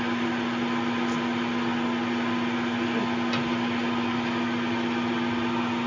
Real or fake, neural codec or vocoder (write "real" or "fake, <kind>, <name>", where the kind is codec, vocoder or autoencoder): real